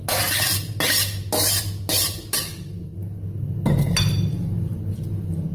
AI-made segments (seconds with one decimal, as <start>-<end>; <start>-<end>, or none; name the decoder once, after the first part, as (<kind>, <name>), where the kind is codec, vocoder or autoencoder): none